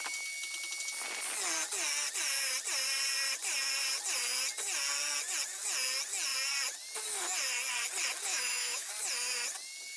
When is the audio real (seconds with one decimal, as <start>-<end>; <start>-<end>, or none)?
0.0-8.3; 8.9-10.0